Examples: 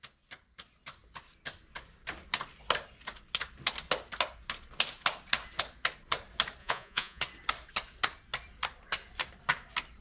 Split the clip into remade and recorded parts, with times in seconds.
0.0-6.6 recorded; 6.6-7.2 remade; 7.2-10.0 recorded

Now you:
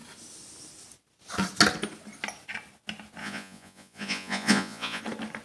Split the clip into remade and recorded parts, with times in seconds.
0.0-3.2 recorded; 3.2-5.0 remade; 5.0-5.4 recorded

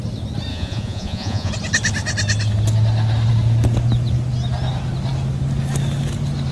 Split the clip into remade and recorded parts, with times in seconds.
0.0-0.5 recorded; 0.5-1.5 remade; 1.5-6.5 recorded

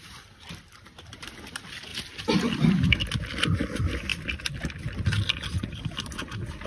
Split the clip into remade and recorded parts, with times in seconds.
0.0-6.7 recorded